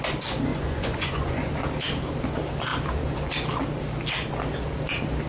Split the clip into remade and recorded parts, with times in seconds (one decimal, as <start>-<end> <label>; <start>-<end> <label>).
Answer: 0.0-0.5 recorded; 0.5-1.5 remade; 1.5-5.3 recorded